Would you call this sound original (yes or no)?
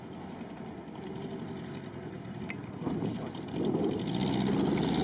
yes